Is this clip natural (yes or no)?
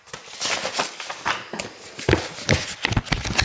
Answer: yes